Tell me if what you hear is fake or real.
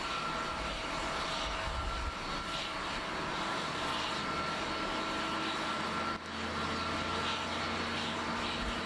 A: real